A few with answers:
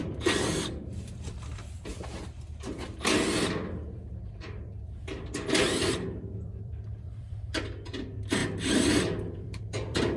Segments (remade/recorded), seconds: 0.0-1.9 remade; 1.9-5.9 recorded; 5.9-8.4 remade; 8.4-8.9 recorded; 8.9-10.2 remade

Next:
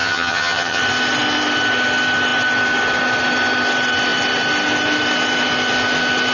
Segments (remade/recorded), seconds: 0.0-0.8 remade; 0.8-6.3 recorded

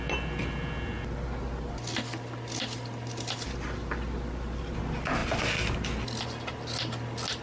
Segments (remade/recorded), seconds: 0.0-7.4 recorded

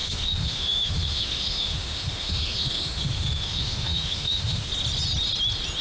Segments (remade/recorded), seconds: 0.0-4.7 remade; 4.7-5.8 recorded

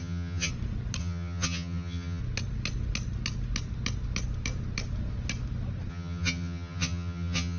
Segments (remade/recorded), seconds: 0.0-0.5 remade; 0.5-1.0 recorded; 1.0-2.2 remade; 2.2-5.9 recorded; 5.9-7.6 remade